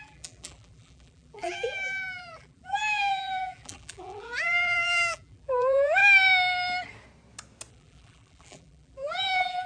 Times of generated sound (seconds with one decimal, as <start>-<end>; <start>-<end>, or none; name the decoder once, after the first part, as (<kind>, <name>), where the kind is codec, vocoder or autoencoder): 0.0-6.0 (vocoder, BigVGAN v2); 7.7-9.7